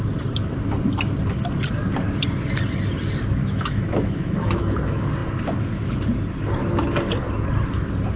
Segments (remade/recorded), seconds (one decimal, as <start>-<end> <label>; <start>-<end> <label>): 0.0-3.4 recorded; 3.4-4.6 remade; 4.6-8.2 recorded